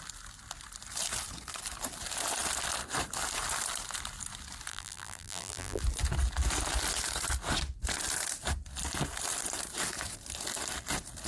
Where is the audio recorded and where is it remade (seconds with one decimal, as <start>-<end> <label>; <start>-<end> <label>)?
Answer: 0.0-4.7 recorded; 4.7-5.8 remade; 5.8-11.3 recorded